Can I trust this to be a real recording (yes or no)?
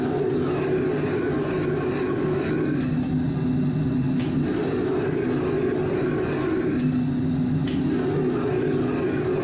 yes